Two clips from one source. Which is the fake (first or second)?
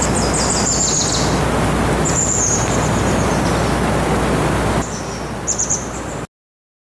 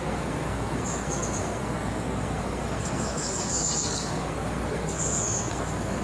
second